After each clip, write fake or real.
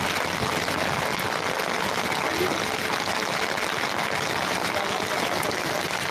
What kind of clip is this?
real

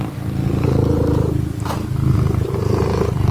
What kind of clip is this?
real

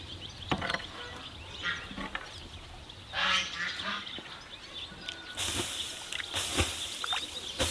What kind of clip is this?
real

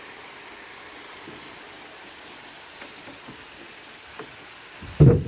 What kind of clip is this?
fake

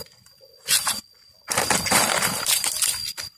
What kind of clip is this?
fake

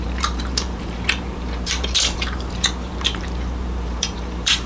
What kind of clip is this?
fake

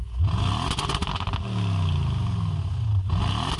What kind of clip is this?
real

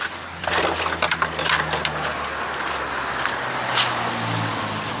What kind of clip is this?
real